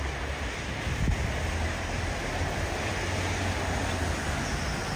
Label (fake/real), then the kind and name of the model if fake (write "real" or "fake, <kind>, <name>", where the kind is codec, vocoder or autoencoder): real